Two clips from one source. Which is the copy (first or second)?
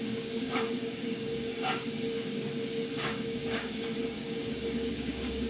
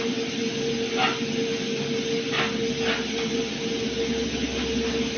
first